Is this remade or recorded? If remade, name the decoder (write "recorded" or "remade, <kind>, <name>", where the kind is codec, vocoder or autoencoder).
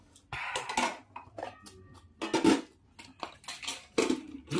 recorded